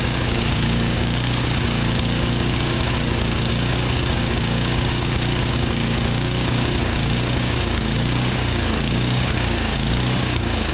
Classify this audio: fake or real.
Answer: fake